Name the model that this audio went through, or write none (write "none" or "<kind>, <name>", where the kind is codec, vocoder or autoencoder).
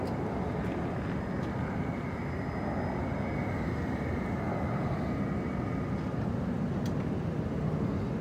none